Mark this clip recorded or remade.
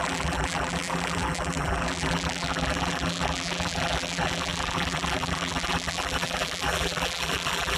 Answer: remade